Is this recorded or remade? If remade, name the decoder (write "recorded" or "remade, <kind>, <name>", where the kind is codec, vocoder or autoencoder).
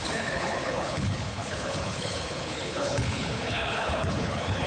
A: remade, codec, HILCodec